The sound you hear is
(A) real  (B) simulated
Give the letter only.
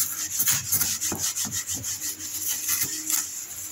A